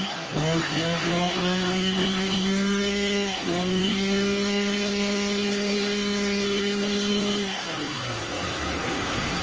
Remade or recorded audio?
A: remade